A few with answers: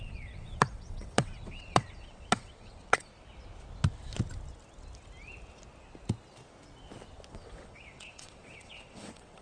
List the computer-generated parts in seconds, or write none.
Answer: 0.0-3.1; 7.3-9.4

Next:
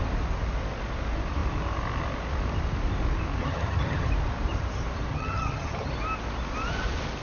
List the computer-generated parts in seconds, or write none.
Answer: 3.4-4.1; 5.1-5.9

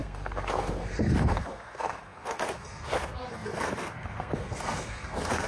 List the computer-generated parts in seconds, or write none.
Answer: 0.0-5.5

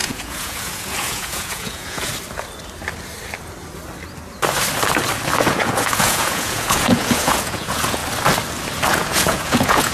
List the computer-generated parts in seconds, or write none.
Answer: 0.0-2.1; 5.4-8.0; 8.9-9.9

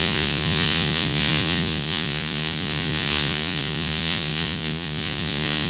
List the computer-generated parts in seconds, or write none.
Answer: 0.0-5.7

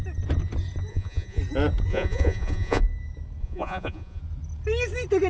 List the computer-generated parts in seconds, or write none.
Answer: 0.9-1.4; 1.9-2.8; 3.4-4.2